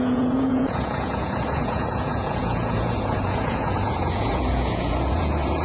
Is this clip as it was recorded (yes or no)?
no